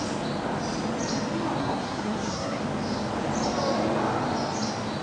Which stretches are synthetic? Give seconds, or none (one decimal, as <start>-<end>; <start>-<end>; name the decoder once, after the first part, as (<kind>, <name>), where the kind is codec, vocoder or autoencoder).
1.6-2.6 (codec, SNAC)